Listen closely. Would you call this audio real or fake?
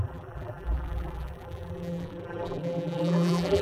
fake